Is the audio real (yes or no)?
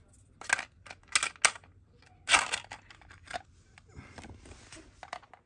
yes